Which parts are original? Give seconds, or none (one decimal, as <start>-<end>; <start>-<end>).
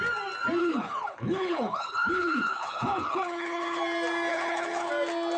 0.0-0.6; 3.8-4.3; 4.9-5.4